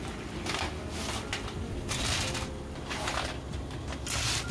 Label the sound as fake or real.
real